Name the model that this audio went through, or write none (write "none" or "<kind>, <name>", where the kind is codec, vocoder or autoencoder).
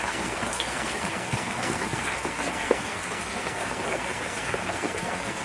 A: codec, SNAC